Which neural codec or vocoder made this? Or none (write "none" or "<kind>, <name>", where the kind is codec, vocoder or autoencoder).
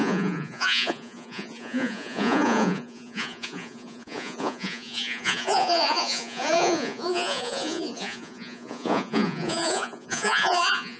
vocoder, Vocos